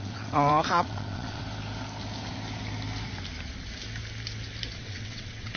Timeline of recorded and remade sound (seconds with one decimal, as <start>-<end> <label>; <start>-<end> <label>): 0.0-1.4 remade; 1.4-4.8 recorded; 4.8-5.6 remade